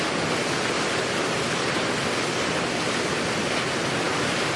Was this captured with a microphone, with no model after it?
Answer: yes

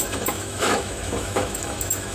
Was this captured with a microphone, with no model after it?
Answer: no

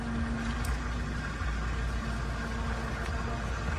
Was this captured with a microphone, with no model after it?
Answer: yes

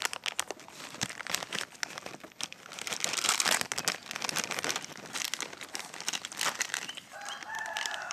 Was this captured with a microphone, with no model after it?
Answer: yes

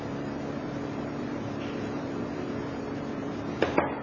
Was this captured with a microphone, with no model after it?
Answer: no